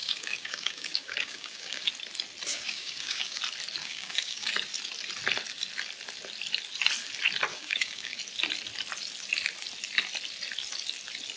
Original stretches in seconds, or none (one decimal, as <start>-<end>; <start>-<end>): 1.9-2.5; 3.4-3.8; 4.5-7.5; 8.2-11.4